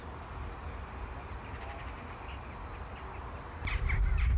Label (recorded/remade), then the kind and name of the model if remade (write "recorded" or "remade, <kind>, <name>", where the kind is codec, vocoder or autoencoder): recorded